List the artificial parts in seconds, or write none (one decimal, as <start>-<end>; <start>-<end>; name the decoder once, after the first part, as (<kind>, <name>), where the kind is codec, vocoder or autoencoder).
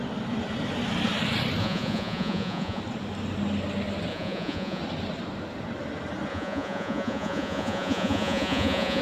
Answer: 1.6-2.8 (vocoder, Vocos); 4.1-4.8; 6.3-9.0